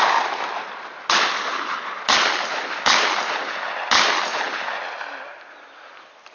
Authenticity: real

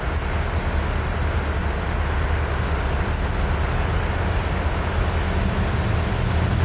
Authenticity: real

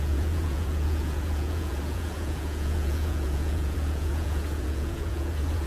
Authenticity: fake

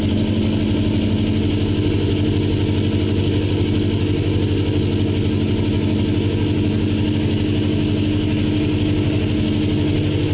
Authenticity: real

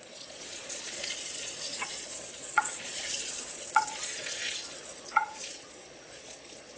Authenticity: fake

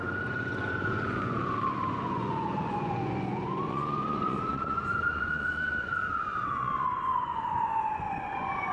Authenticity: fake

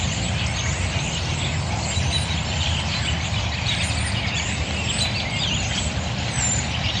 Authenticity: real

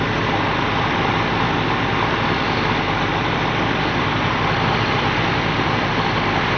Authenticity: real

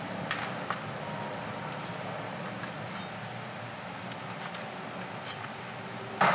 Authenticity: real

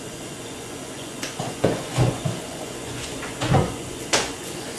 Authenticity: fake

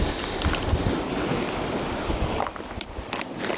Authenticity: real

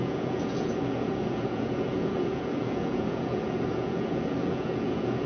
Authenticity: fake